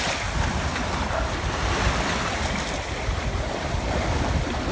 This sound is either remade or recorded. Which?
recorded